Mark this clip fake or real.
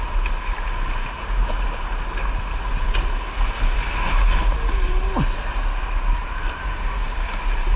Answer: real